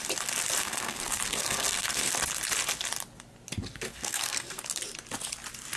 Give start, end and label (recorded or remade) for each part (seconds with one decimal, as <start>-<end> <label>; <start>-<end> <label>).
0.0-0.6 recorded; 0.6-2.1 remade; 2.1-3.9 recorded; 3.9-4.6 remade; 4.6-5.8 recorded